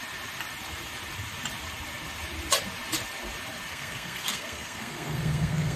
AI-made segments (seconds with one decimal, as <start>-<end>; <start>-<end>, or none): 3.7-5.8